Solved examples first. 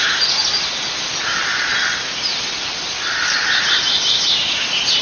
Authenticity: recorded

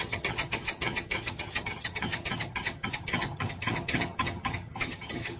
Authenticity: remade